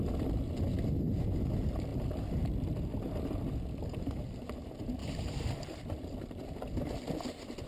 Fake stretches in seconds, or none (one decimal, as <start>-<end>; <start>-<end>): 1.9-3.8; 5.0-7.1